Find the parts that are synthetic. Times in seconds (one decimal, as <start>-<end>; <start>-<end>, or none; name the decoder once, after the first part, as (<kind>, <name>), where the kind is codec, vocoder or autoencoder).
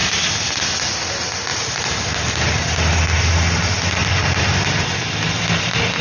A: 0.0-0.8 (vocoder, BigVGAN v2); 4.0-6.0